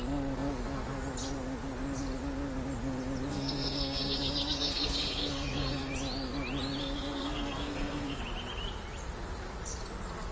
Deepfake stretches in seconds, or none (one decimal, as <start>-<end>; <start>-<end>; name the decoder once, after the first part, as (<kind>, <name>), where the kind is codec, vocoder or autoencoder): 3.3-5.9 (codec, SNAC); 6.8-8.2